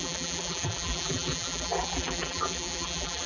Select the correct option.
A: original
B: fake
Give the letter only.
B